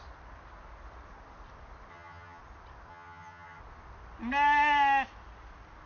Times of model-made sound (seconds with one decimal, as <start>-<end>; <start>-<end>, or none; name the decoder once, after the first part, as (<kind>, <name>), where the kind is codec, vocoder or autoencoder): 1.9-2.4 (vocoder, HiFi-GAN); 2.9-3.6